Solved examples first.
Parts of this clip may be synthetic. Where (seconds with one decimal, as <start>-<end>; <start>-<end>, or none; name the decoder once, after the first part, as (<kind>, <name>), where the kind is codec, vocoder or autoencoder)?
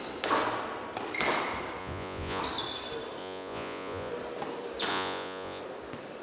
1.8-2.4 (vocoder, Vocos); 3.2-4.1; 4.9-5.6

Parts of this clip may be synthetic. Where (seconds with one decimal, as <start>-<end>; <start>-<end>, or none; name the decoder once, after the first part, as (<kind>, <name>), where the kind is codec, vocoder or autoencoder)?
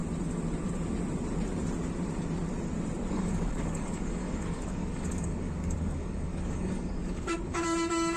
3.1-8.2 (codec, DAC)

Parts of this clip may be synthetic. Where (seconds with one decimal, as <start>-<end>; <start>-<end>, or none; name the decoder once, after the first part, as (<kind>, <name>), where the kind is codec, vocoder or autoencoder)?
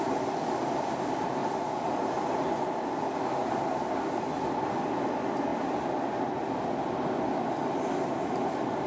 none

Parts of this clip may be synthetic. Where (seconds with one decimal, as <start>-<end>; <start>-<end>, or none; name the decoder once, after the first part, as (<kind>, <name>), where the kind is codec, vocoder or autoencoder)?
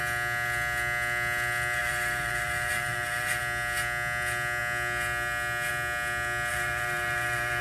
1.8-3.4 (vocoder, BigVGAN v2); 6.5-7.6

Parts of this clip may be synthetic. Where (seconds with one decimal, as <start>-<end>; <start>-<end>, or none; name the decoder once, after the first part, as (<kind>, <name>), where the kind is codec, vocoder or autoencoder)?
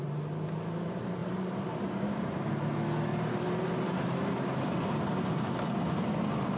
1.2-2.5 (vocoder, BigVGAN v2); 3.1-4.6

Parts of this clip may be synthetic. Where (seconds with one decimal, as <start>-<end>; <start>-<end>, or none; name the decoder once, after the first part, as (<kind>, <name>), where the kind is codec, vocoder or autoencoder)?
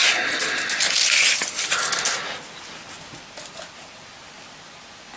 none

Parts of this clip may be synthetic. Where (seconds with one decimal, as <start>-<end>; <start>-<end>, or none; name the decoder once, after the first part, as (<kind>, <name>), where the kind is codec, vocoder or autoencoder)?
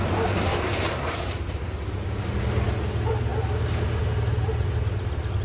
0.5-2.3 (vocoder, BigVGAN v2)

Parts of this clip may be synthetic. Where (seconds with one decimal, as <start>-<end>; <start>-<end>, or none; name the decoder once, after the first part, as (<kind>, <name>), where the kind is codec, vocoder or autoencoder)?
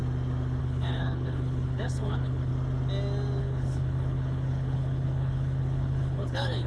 0.6-2.5 (codec, HILCodec); 3.4-6.7